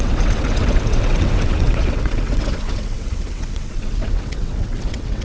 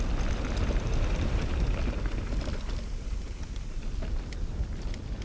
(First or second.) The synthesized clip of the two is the first